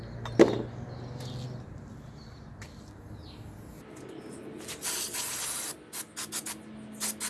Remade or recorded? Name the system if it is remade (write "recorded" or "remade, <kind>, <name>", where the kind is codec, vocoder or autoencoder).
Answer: recorded